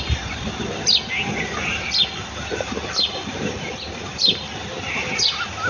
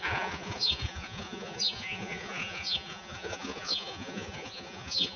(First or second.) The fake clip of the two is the second